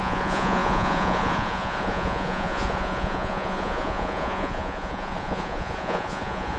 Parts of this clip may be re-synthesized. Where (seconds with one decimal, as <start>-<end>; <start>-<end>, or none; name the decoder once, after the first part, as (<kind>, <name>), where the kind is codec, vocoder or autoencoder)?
0.0-6.6 (vocoder, Vocos)